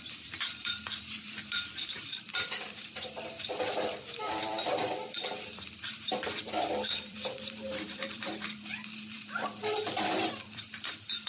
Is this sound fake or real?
fake